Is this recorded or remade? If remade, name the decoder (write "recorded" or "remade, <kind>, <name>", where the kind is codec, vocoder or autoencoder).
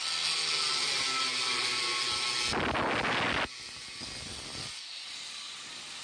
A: recorded